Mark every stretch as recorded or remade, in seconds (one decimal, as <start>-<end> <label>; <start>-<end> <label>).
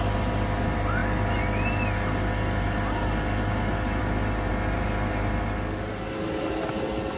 0.0-7.2 recorded